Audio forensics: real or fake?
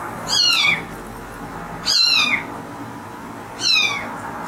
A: real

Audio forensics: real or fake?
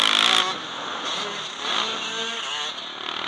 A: real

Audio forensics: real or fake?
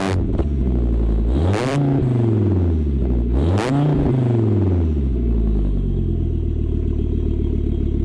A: real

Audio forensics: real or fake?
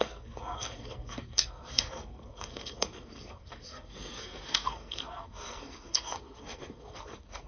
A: fake